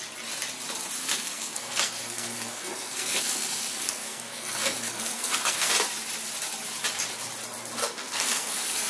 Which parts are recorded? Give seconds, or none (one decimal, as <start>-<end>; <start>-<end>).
0.0-1.0; 5.7-7.8